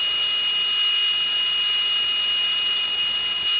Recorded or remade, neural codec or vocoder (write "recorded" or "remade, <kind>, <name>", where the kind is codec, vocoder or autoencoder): recorded